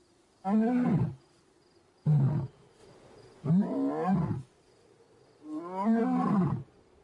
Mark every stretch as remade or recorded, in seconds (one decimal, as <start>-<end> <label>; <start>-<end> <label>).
0.0-7.0 recorded